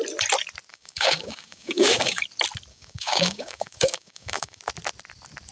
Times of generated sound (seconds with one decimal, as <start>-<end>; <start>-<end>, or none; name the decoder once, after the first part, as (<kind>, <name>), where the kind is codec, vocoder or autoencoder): 0.7-2.2 (codec, DAC); 2.7-4.6